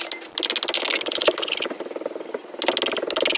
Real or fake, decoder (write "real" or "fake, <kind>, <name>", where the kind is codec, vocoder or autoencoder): real